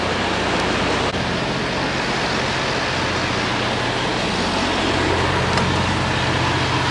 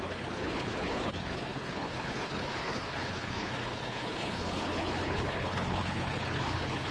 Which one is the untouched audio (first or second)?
first